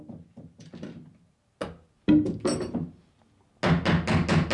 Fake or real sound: real